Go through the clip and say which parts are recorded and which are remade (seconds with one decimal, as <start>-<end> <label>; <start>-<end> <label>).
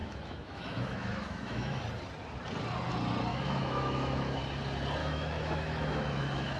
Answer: 0.0-1.8 remade; 1.8-3.3 recorded; 3.3-4.4 remade; 4.4-5.0 recorded; 5.0-6.6 remade